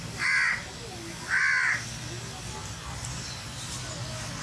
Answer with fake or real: real